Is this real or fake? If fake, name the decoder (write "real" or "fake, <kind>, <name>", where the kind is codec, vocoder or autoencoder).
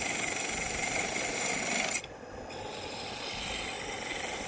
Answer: real